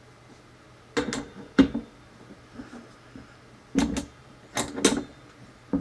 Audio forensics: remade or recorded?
recorded